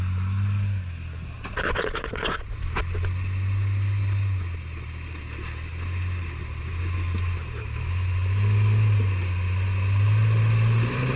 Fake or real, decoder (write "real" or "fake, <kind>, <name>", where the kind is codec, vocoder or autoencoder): real